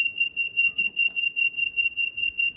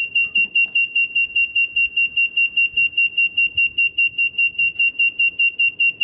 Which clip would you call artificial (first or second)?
first